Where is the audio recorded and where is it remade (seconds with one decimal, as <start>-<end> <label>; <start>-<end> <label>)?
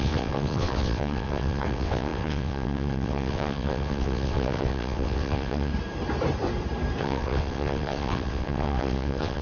0.0-5.7 remade; 5.7-7.0 recorded; 7.0-9.4 remade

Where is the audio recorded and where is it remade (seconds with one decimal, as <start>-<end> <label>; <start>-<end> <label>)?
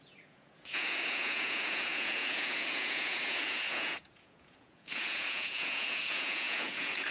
0.0-7.1 remade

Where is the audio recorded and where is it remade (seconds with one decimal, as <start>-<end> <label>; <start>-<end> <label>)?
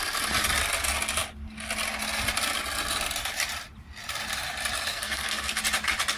0.0-4.9 recorded; 4.9-5.6 remade; 5.6-6.2 recorded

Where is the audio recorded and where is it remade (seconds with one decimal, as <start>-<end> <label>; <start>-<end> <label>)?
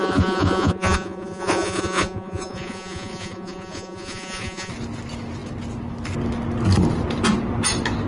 0.0-4.7 remade; 4.7-8.1 recorded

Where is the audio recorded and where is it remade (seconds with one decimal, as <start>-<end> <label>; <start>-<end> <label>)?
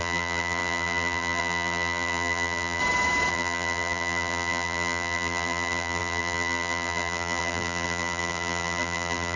0.0-2.8 remade; 2.8-3.3 recorded; 3.3-9.4 remade